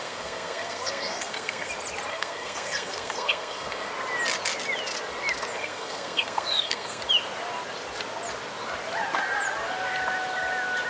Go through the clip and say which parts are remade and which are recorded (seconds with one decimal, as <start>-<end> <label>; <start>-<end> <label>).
0.0-1.7 remade; 1.7-2.1 recorded; 2.1-3.9 remade; 3.9-5.6 recorded; 5.6-7.0 remade; 7.0-10.9 recorded